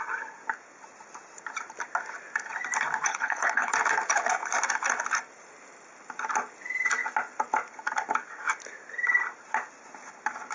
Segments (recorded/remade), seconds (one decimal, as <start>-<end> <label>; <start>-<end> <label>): 0.0-3.1 recorded; 3.1-3.7 remade; 3.7-10.5 recorded

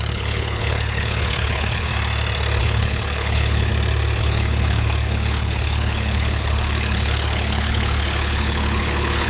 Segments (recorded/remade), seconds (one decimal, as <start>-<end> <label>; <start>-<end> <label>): 0.0-1.9 remade; 1.9-2.6 recorded; 2.6-3.7 remade; 3.7-4.2 recorded; 4.2-9.3 remade

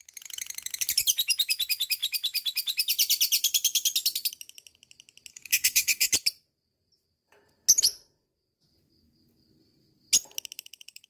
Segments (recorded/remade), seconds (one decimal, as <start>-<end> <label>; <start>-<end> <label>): 0.0-5.3 recorded; 5.3-6.1 remade; 6.1-11.1 recorded

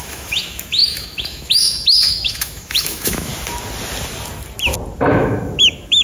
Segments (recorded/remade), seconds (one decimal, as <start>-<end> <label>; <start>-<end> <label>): 0.0-3.3 remade; 3.3-5.1 recorded; 5.1-6.0 remade

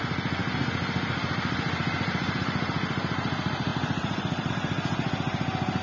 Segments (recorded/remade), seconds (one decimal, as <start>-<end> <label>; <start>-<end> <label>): 0.0-3.7 recorded; 3.7-4.5 remade; 4.5-5.8 recorded